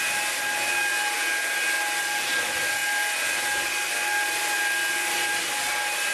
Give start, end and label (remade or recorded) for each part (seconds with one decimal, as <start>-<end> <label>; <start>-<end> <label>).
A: 0.0-6.1 recorded